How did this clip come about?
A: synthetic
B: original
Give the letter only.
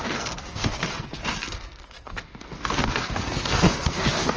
A